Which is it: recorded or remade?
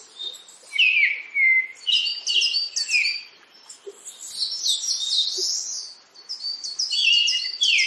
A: recorded